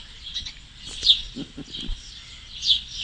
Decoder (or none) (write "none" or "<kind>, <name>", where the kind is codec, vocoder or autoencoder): none